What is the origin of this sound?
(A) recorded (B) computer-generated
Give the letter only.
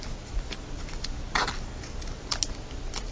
A